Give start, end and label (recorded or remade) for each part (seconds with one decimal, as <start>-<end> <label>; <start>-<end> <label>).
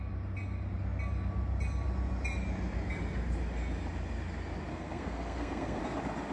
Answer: 0.0-4.7 recorded; 4.7-5.8 remade; 5.8-6.3 recorded